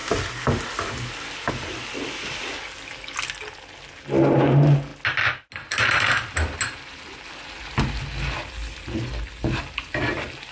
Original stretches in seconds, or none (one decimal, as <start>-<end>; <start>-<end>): 0.0-10.5